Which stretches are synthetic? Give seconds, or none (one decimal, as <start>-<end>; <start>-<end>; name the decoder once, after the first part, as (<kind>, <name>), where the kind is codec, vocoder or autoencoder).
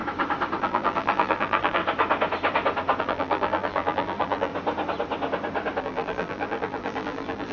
0.6-1.8 (vocoder, BigVGAN v2); 3.0-4.5; 5.8-7.5